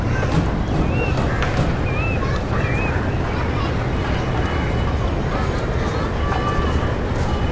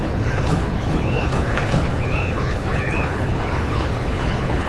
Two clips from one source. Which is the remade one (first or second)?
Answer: second